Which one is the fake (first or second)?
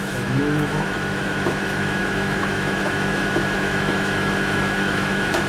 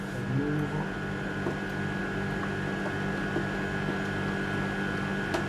first